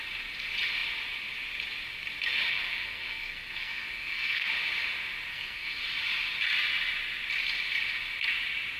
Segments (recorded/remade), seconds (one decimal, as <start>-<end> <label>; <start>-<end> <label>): 0.0-2.5 recorded; 2.5-4.5 remade; 4.5-5.3 recorded; 5.3-5.8 remade; 5.8-8.8 recorded